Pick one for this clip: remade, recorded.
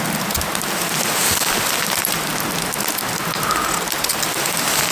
recorded